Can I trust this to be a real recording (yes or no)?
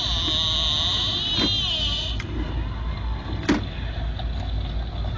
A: yes